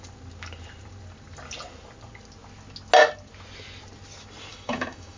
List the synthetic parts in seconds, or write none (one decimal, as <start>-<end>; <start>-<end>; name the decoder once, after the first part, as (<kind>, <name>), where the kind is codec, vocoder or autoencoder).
4.5-5.2 (autoencoder, DAC-VAE)